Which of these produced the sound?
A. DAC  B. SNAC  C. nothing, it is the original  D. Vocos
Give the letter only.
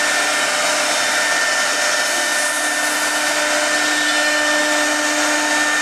C